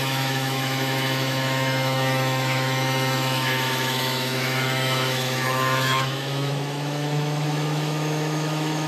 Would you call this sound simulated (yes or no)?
yes